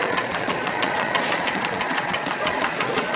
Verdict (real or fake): fake